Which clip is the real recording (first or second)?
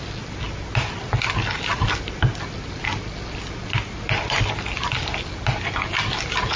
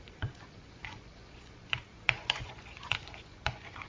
first